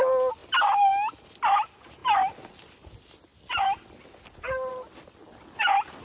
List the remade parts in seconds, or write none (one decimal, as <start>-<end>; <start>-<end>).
none